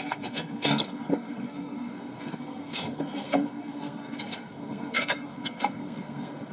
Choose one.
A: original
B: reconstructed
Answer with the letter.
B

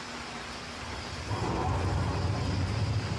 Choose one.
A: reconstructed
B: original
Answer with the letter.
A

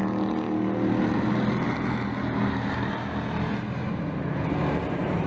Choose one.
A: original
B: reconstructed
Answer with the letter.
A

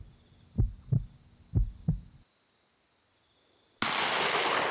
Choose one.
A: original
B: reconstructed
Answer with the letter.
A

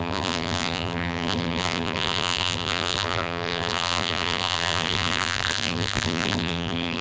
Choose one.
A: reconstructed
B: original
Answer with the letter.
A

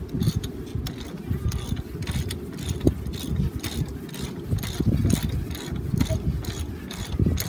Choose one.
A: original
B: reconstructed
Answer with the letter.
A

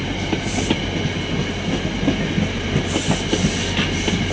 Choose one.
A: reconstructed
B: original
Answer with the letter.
B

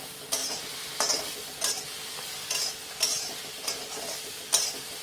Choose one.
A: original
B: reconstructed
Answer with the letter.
A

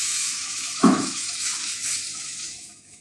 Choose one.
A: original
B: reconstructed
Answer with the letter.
B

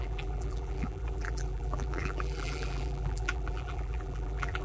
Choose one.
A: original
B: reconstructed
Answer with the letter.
B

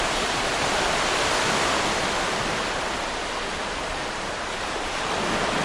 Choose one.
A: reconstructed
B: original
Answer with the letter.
A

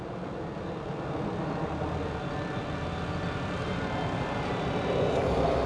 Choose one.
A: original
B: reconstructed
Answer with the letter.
A